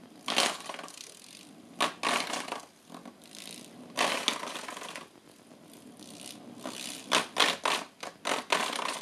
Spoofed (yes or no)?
no